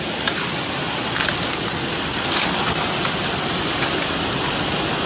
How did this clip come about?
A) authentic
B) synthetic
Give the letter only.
A